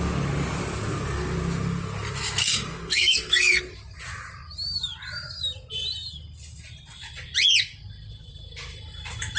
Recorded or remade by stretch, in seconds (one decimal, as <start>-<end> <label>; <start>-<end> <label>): 0.0-2.4 recorded; 2.4-3.6 remade; 3.6-9.4 recorded